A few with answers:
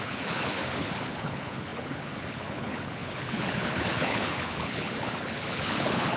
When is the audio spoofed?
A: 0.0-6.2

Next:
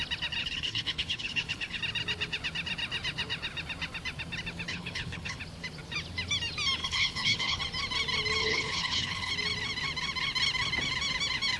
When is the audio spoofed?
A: 0.4-1.8; 4.7-5.4; 6.8-7.6; 8.4-9.3

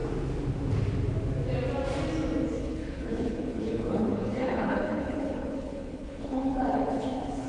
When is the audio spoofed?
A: 2.6-7.5

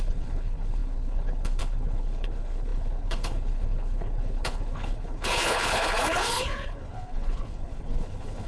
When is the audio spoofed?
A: 0.0-8.5

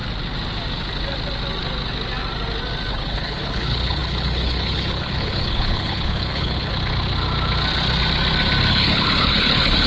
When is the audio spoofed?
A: 2.9-6.7; 8.7-9.9

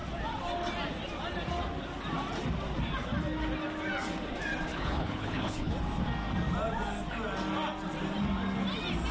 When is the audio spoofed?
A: 4.7-5.7

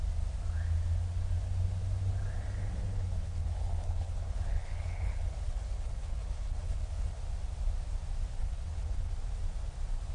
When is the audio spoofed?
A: 2.9-7.2; 8.4-9.1

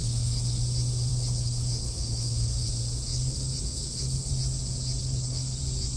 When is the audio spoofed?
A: 0.0-0.6; 1.1-2.7; 3.1-4.3; 5.0-5.6